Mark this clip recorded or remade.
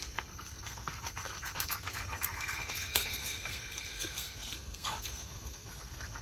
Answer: remade